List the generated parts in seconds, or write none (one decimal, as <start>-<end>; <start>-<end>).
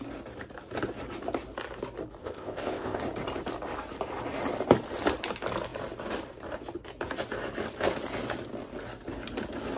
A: 2.2-3.0